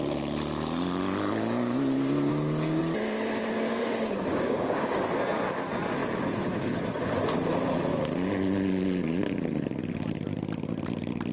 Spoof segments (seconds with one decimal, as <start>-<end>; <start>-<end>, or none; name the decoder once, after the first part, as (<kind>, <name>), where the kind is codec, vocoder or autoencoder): 2.3-2.8 (codec, DAC); 3.8-5.1